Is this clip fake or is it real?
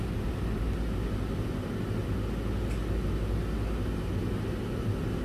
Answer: real